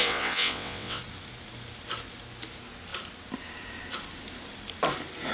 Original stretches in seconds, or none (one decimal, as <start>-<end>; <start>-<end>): 1.0-5.3